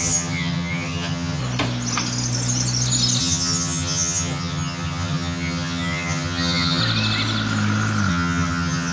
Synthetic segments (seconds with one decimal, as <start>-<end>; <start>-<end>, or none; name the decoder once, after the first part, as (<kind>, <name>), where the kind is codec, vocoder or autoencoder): 0.0-1.4 (vocoder, HiFi-GAN); 3.2-6.8; 8.1-8.9